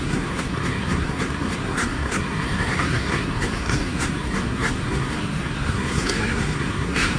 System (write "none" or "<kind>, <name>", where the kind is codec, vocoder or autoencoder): codec, SNAC